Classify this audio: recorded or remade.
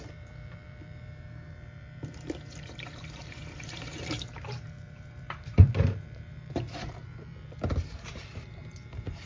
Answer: remade